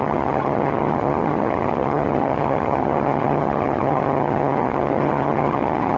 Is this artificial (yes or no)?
yes